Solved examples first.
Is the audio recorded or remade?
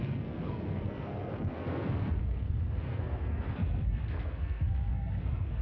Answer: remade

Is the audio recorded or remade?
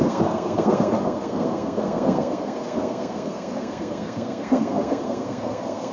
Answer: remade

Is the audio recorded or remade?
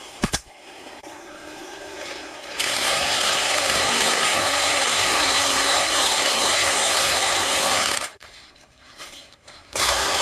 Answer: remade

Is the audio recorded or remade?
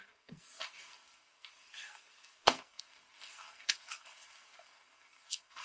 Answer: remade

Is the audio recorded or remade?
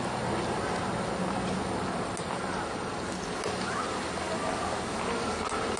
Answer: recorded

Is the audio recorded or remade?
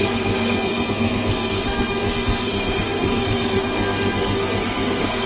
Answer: remade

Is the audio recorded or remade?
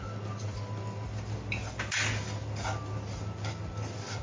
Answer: recorded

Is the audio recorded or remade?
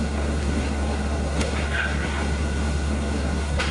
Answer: remade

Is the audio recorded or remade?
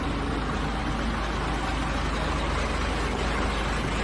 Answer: recorded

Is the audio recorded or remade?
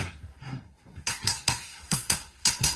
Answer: remade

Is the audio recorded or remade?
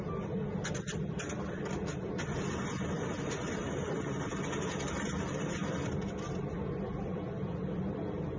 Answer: recorded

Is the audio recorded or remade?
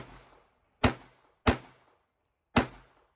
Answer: recorded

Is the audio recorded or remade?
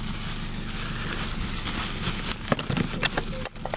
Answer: recorded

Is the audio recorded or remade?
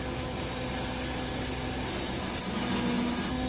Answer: recorded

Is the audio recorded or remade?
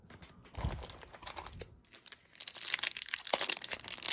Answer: recorded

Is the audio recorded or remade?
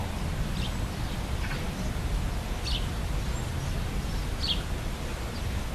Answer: recorded